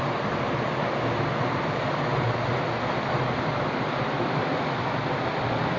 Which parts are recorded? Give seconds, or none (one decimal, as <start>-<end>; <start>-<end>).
0.0-5.8